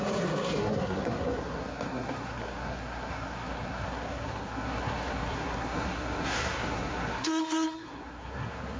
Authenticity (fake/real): fake